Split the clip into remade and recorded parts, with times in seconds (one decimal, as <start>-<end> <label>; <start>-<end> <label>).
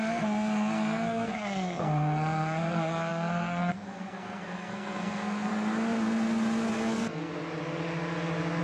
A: 0.0-5.5 remade; 5.5-6.8 recorded; 6.8-7.3 remade; 7.3-8.6 recorded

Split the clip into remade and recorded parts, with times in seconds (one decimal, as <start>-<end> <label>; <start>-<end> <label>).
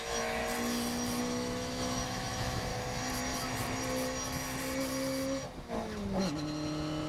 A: 0.0-0.4 remade; 0.4-1.2 recorded; 1.2-2.7 remade; 2.7-7.1 recorded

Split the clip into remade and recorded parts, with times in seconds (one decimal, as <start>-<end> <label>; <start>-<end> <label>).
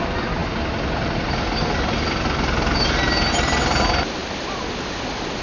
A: 0.0-5.4 recorded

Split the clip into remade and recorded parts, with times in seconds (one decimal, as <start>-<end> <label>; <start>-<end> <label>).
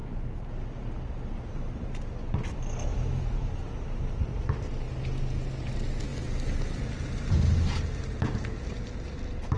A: 0.0-2.9 recorded; 2.9-3.5 remade; 3.5-9.6 recorded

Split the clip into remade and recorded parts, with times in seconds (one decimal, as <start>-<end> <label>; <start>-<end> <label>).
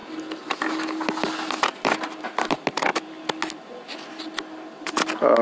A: 0.0-5.4 recorded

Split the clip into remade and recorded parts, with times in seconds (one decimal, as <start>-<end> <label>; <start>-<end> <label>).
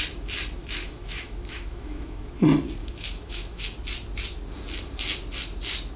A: 0.0-0.6 recorded; 0.6-2.3 remade; 2.3-2.8 recorded; 2.8-3.6 remade; 3.6-6.0 recorded